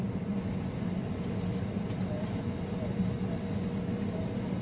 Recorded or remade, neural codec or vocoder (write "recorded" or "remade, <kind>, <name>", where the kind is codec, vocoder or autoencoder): recorded